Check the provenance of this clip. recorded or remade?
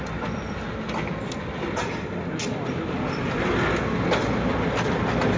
recorded